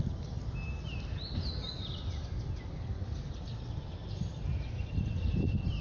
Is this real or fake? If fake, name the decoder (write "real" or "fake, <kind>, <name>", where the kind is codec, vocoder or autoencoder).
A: real